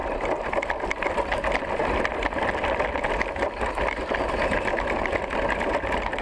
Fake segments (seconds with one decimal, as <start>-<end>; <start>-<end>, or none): none